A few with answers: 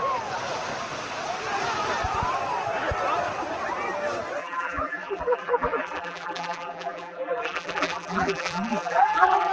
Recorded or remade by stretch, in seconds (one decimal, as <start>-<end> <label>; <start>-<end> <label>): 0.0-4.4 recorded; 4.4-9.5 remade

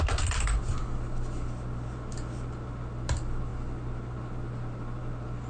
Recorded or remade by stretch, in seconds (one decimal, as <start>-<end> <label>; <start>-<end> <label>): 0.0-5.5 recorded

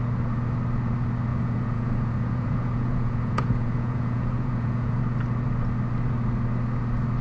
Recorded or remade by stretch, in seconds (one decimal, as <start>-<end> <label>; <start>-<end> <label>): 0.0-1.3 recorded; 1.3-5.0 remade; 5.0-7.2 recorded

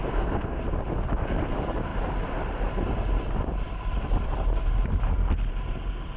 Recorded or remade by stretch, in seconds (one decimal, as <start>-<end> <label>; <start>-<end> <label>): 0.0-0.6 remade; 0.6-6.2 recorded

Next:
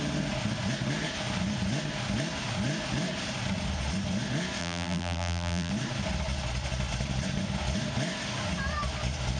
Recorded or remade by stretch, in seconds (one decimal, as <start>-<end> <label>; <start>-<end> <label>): 0.0-4.6 recorded; 4.6-5.7 remade; 5.7-9.4 recorded

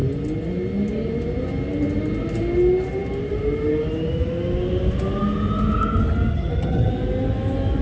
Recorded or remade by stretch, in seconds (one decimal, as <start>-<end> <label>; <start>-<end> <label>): 0.0-6.3 recorded; 6.3-6.9 remade; 6.9-7.8 recorded

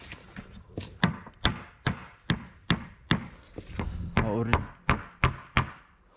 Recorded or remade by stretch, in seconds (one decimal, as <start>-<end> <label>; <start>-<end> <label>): 0.0-2.0 remade; 2.0-5.7 recorded; 5.7-6.2 remade

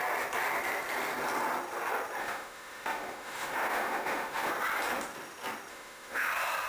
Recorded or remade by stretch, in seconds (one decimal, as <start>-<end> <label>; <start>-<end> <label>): 0.0-2.2 recorded; 2.2-4.5 remade; 4.5-5.7 recorded; 5.7-6.3 remade; 6.3-6.7 recorded